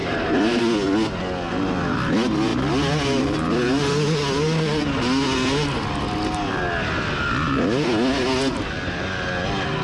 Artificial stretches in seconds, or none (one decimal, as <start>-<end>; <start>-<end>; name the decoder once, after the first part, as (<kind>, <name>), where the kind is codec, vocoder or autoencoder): 0.0-0.6 (vocoder, BigVGAN v2)